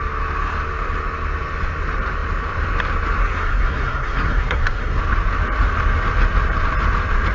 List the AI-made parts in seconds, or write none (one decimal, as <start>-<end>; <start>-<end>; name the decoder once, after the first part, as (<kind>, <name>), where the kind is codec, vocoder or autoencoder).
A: 3.2-5.0 (codec, SNAC)